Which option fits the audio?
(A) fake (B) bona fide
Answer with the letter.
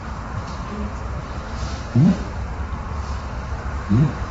A